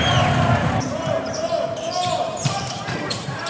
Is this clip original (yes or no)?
no